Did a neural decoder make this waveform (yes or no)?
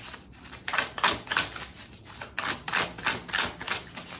no